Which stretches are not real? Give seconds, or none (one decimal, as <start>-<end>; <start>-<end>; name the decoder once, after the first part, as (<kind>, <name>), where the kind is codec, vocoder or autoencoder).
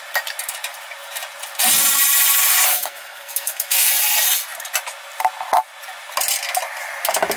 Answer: 2.7-3.9 (codec, SNAC)